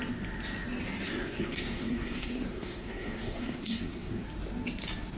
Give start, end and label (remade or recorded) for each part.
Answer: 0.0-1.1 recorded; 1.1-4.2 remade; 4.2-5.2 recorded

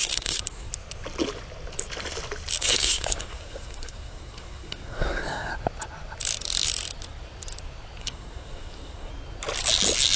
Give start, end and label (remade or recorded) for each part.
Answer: 0.0-0.7 remade; 0.7-2.6 recorded; 2.6-5.5 remade; 5.5-8.0 recorded; 8.0-9.1 remade; 9.1-10.2 recorded

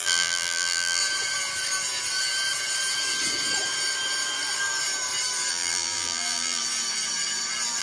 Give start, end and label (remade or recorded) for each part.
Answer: 0.0-1.0 remade; 1.0-5.5 recorded; 5.5-6.6 remade; 6.6-7.8 recorded

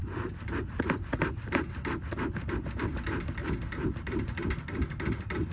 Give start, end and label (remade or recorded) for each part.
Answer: 0.0-0.6 remade; 0.6-5.5 recorded